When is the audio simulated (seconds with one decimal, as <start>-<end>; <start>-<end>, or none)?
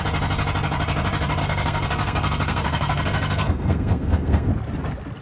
1.4-4.5